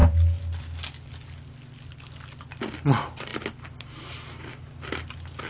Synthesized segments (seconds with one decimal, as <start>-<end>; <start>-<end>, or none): none